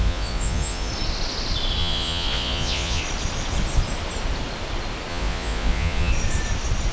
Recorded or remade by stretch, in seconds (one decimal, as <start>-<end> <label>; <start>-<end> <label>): 0.0-0.9 remade; 0.9-1.8 recorded; 1.8-3.0 remade; 3.0-5.1 recorded; 5.1-6.1 remade; 6.1-6.9 recorded